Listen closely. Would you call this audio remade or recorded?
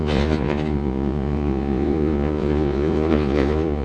remade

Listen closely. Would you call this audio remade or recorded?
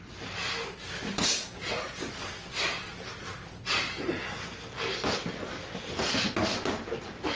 recorded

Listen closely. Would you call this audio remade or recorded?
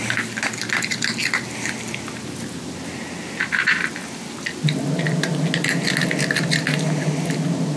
recorded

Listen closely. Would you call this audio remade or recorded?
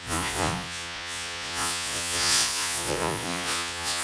remade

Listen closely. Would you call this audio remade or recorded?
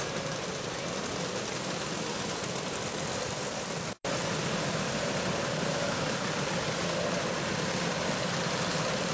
recorded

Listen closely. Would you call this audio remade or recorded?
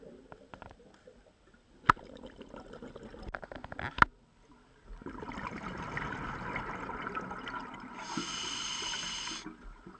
recorded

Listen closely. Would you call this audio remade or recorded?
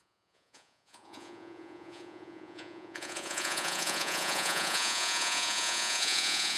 remade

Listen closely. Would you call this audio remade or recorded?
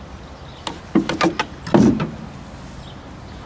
recorded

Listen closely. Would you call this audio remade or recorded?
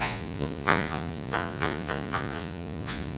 remade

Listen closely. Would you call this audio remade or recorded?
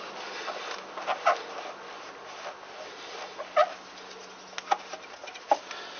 recorded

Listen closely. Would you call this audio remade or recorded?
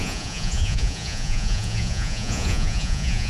remade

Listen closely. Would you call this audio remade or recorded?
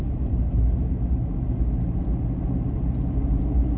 recorded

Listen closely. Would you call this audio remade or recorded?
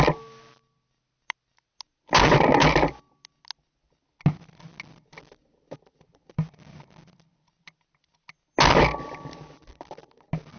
recorded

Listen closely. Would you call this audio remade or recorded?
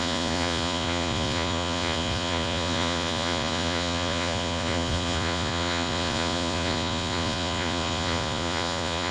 remade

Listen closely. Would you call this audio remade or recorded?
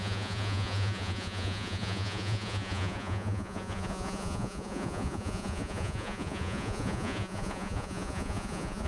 remade